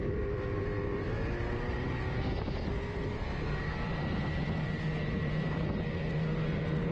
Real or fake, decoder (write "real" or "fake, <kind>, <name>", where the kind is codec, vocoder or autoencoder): fake, vocoder, BigVGAN v2